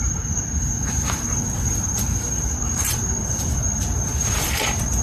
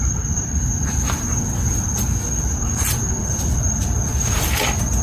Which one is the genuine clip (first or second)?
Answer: second